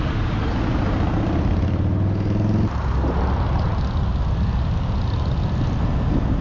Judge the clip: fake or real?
real